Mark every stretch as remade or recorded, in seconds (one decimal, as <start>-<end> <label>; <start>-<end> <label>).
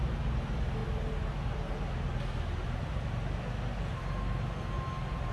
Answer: 0.0-5.3 recorded